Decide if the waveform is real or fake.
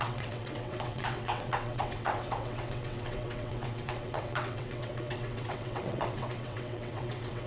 fake